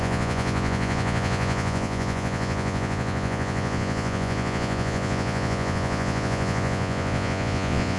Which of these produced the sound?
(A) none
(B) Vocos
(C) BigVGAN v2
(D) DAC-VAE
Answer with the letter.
B